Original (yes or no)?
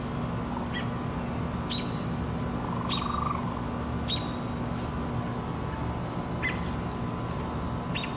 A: yes